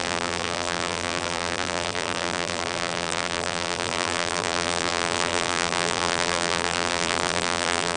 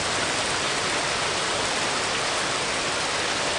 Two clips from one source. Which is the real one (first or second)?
second